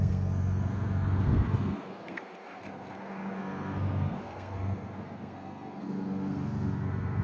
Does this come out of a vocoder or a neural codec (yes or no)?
yes